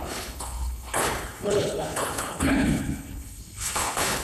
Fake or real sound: fake